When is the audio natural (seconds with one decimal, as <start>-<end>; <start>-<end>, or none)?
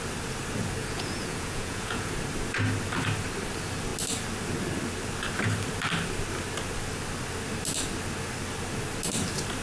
0.0-0.8; 2.1-9.6